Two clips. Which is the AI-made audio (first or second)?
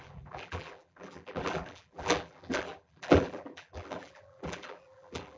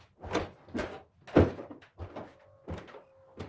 first